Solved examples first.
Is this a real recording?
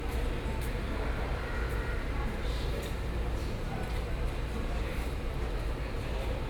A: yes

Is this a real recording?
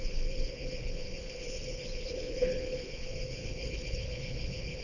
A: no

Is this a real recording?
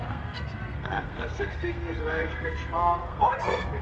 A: no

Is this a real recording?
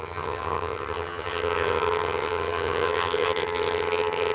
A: no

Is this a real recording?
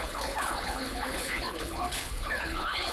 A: no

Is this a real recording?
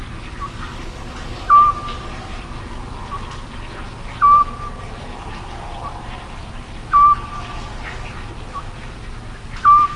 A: yes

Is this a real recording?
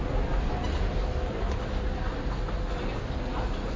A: yes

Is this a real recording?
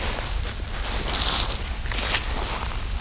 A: yes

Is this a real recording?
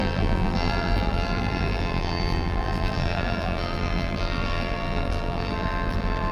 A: no